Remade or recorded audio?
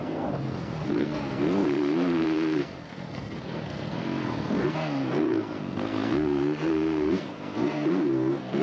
remade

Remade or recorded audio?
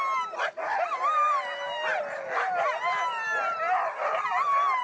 recorded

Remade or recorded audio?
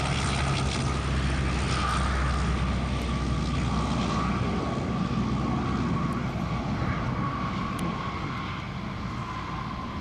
recorded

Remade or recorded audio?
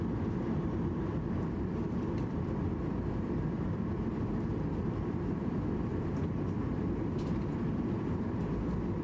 remade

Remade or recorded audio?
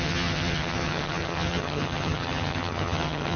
remade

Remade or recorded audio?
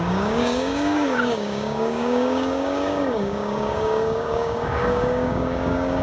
remade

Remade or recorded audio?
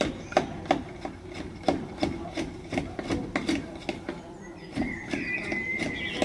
recorded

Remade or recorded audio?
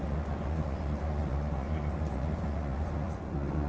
remade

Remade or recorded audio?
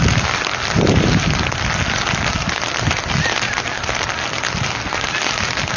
recorded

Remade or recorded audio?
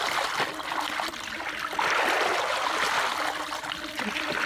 recorded